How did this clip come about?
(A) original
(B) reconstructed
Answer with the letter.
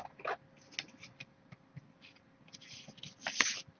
A